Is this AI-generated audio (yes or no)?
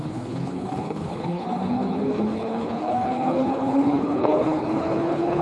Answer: yes